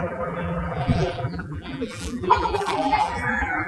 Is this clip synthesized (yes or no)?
yes